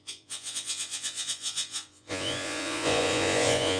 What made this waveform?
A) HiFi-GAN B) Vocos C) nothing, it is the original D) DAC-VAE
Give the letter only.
B